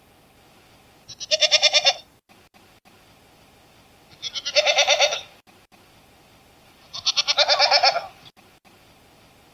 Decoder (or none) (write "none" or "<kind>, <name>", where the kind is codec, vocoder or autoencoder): none